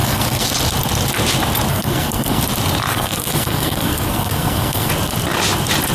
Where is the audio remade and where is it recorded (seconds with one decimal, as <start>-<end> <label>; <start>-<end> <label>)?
0.0-0.5 remade; 0.5-1.7 recorded; 1.7-2.4 remade; 2.4-2.9 recorded; 2.9-4.9 remade; 4.9-5.9 recorded